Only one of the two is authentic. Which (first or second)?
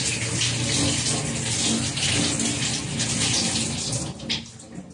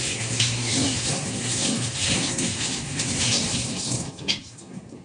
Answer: first